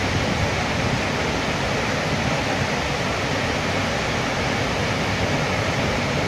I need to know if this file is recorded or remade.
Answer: recorded